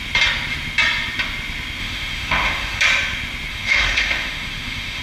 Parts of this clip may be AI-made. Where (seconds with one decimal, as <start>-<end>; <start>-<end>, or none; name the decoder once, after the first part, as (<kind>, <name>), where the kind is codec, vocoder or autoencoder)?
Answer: 1.8-2.8 (autoencoder, DAC-VAE); 3.5-5.0